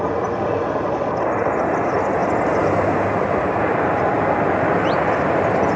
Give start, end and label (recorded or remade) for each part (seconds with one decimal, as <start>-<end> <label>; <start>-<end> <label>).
0.0-5.8 recorded